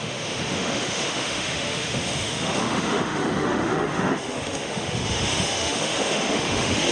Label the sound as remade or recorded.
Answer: remade